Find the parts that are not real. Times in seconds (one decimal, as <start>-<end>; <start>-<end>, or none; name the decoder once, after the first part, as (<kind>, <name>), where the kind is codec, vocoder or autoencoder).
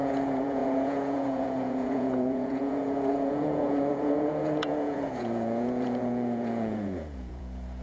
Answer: 0.0-7.8 (vocoder, Vocos)